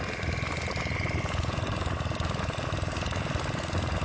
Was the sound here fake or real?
real